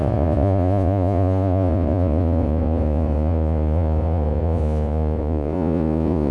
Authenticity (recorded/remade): remade